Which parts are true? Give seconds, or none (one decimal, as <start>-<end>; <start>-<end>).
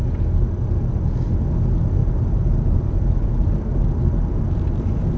0.0-2.0; 3.4-5.2